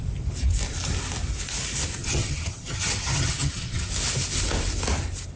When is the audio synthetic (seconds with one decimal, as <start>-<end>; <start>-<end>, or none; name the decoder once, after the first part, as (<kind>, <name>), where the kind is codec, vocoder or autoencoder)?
2.0-3.9 (vocoder, HiFi-GAN)